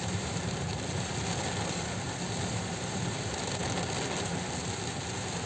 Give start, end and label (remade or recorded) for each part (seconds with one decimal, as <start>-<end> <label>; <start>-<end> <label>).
0.0-0.7 remade; 0.7-2.4 recorded; 2.4-3.6 remade; 3.6-5.5 recorded